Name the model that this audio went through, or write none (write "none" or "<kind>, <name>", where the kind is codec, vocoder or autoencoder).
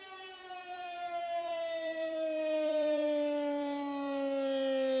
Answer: vocoder, BigVGAN v2